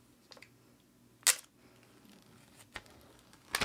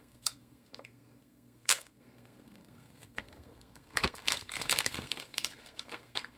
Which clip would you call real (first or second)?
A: first